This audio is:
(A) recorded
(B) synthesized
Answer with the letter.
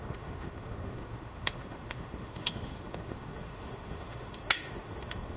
B